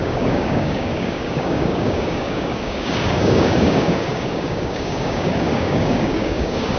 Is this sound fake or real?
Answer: fake